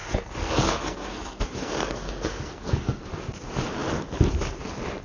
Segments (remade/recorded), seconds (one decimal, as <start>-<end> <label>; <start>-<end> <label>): 0.0-3.0 remade; 3.0-5.0 recorded